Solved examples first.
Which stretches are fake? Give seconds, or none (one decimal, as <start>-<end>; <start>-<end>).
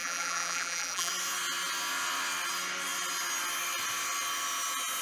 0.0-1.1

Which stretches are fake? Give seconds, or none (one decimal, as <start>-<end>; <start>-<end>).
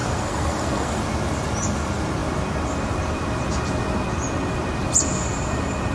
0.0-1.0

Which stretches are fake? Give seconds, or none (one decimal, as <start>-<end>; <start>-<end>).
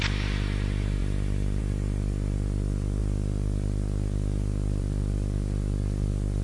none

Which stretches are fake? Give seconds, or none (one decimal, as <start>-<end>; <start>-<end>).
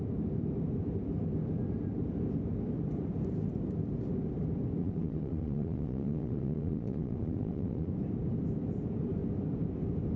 4.8-7.9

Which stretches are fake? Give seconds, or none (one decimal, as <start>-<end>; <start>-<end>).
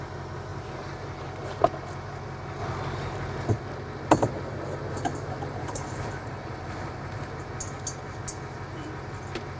0.5-1.6; 5.1-7.5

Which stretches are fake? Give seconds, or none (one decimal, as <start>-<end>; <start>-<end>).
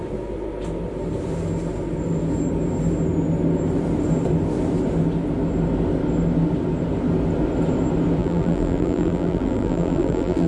8.2-10.5